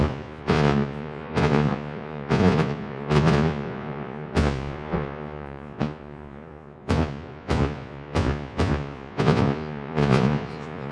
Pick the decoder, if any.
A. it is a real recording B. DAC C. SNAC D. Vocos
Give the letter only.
D